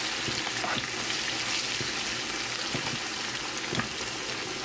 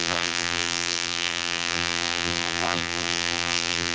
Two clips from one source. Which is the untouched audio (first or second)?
first